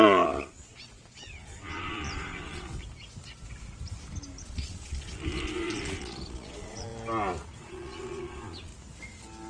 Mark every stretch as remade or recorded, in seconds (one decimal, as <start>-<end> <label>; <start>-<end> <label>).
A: 0.0-2.7 remade; 2.7-4.4 recorded; 4.4-6.9 remade; 6.9-7.6 recorded; 7.6-8.7 remade; 8.7-9.5 recorded